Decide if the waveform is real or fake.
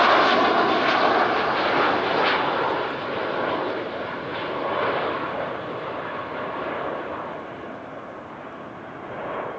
real